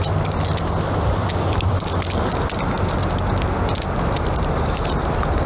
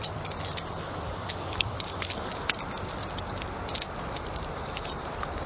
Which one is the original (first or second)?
first